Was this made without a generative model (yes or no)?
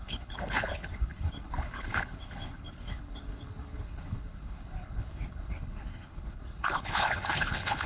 no